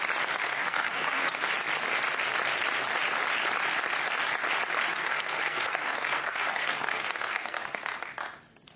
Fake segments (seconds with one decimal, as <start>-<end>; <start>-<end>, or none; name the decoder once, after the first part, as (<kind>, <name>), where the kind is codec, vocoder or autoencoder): 0.4-1.5 (codec, SNAC); 4.9-7.9